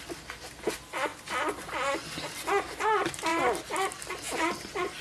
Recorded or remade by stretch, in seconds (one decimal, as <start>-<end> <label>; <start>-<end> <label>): 0.0-5.0 recorded